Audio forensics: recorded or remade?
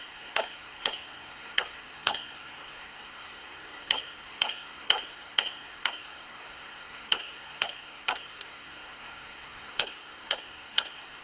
remade